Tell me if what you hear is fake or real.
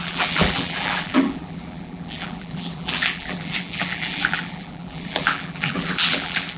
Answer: fake